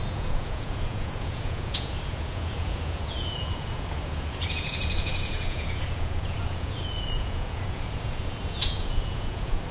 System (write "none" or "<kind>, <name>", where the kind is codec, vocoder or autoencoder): vocoder, Vocos